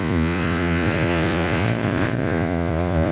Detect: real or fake fake